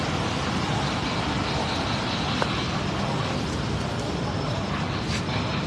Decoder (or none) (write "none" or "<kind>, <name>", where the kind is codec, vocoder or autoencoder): none